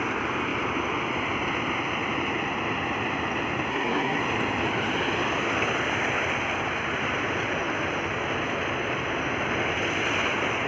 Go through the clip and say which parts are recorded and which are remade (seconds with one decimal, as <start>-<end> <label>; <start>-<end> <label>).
0.0-3.7 recorded; 3.7-4.2 remade; 4.2-10.7 recorded